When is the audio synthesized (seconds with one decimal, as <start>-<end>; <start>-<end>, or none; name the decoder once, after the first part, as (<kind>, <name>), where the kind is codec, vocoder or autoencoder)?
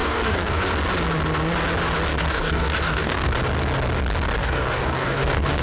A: 0.0-0.6 (codec, DAC); 2.1-3.3; 4.4-5.6